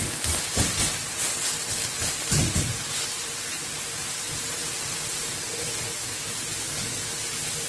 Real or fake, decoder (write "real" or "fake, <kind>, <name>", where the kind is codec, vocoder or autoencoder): real